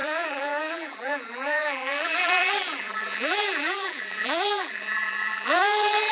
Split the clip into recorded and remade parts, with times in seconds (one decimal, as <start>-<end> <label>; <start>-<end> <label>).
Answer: 0.0-6.1 remade

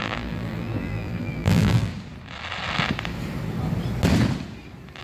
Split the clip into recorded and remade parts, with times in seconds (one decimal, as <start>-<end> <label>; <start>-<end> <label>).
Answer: 0.0-1.9 remade; 1.9-5.0 recorded

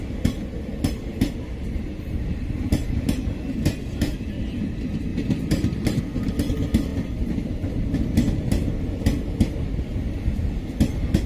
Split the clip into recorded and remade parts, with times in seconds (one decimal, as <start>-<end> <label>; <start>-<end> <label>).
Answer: 0.0-2.7 recorded; 2.7-3.3 remade; 3.3-5.1 recorded; 5.1-6.0 remade; 6.0-11.3 recorded

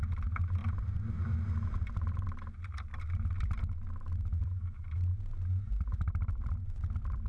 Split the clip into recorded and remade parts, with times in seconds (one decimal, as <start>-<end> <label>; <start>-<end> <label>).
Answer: 0.0-0.6 remade; 0.6-1.9 recorded; 1.9-2.9 remade; 2.9-4.4 recorded; 4.4-7.3 remade

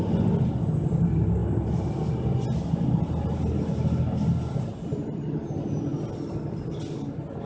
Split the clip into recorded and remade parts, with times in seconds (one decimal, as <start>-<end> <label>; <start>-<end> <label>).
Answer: 0.0-1.4 recorded; 1.4-2.9 remade; 2.9-7.5 recorded

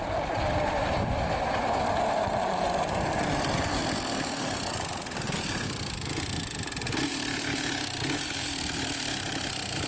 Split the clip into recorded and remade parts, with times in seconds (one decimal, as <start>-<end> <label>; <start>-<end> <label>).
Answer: 0.0-9.9 remade

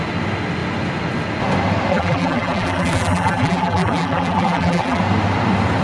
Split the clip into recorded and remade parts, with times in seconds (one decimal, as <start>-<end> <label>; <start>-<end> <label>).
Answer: 0.0-1.9 recorded; 1.9-5.0 remade; 5.0-5.8 recorded

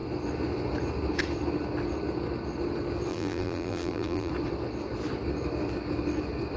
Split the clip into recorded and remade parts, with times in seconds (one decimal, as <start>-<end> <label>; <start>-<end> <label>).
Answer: 0.0-3.1 recorded; 3.1-4.3 remade; 4.3-6.6 recorded